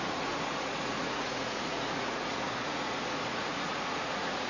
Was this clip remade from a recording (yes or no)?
yes